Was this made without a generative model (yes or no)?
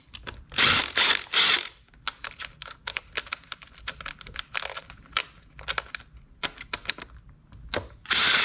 yes